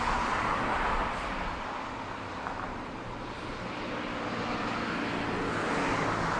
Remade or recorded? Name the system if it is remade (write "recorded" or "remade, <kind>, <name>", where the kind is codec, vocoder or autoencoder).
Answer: recorded